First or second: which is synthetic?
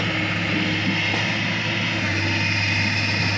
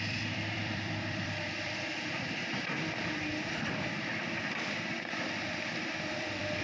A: second